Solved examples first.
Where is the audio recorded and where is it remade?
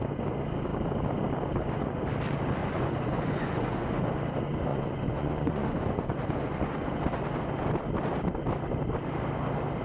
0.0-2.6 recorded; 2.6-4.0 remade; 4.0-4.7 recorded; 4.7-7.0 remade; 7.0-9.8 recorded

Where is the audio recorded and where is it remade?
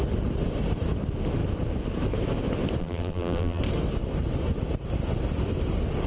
0.0-2.8 recorded; 2.8-3.6 remade; 3.6-6.1 recorded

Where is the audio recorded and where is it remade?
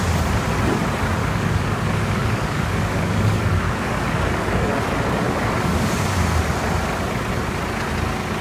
0.0-1.2 recorded; 1.2-5.9 remade; 5.9-8.4 recorded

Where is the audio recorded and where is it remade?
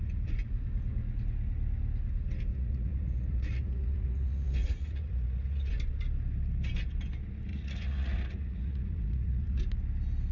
0.0-2.5 recorded; 2.5-5.7 remade; 5.7-7.5 recorded; 7.5-9.6 remade; 9.6-10.3 recorded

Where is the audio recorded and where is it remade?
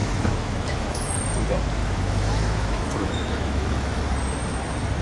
0.0-1.1 remade; 1.1-1.8 recorded; 1.8-4.0 remade; 4.0-5.0 recorded